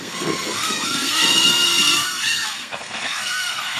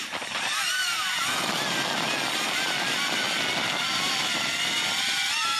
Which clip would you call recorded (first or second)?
second